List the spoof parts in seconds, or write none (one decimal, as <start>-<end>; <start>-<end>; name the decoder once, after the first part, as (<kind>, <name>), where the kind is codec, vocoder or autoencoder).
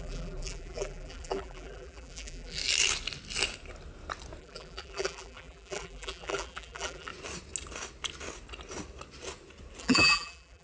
0.0-2.6 (vocoder, BigVGAN v2); 4.4-7.1; 9.8-10.6